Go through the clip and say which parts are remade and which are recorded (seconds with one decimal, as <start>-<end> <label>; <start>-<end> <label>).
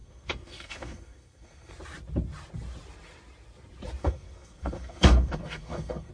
0.0-1.7 remade; 1.7-4.0 recorded; 4.0-6.1 remade